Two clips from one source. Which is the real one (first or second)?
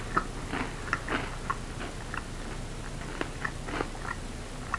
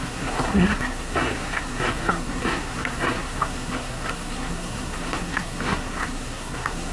first